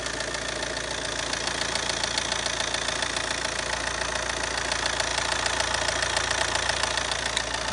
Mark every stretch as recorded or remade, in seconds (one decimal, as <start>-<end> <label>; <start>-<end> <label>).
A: 0.0-7.7 recorded